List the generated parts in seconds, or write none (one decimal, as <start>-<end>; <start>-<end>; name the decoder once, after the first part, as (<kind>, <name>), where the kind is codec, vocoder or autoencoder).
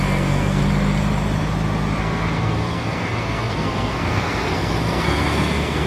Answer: 0.0-0.6 (codec, SNAC); 2.0-5.9